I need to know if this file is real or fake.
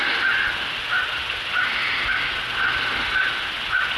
real